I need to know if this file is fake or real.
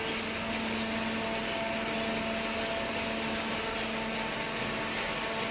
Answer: real